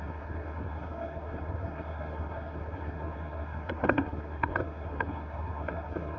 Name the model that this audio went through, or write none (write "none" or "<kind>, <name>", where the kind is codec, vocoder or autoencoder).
codec, SNAC